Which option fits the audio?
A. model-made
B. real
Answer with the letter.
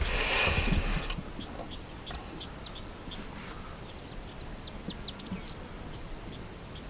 B